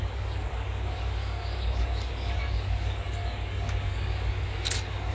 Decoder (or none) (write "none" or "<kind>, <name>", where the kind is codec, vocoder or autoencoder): codec, DAC